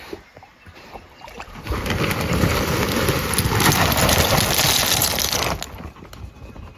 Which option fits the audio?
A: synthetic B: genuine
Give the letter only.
B